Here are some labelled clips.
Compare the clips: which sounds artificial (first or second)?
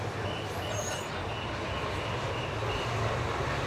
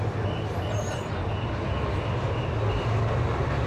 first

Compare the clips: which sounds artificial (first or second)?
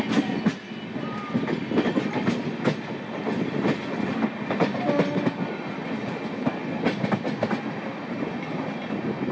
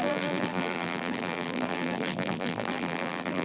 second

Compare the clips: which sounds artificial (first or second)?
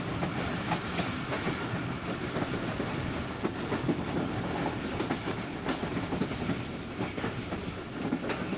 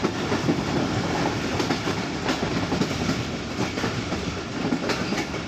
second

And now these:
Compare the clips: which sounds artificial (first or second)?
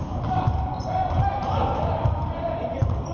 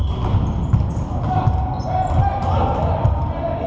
first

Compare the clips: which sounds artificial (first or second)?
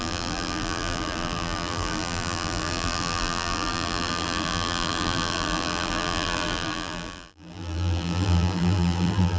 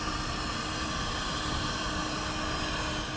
first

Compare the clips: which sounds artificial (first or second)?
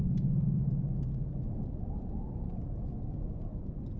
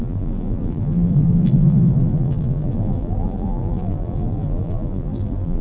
second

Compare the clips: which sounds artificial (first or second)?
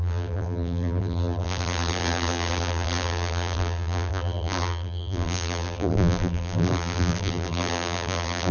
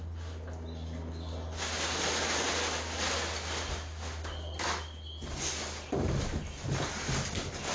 first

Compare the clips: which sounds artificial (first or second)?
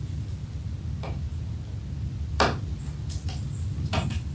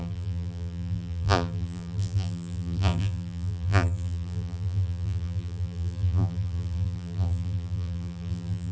second